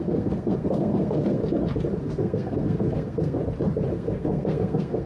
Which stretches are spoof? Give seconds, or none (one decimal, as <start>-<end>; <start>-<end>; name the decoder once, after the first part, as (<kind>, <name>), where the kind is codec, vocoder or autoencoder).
0.0-1.4 (codec, SNAC); 2.0-3.4; 3.9-5.1